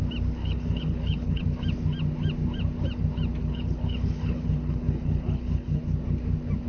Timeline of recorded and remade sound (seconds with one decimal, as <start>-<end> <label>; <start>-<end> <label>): 0.0-0.4 recorded; 0.4-1.4 remade; 1.4-3.4 recorded; 3.4-5.8 remade; 5.8-6.7 recorded